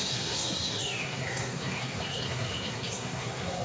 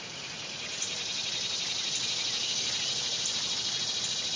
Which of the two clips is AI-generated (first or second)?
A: first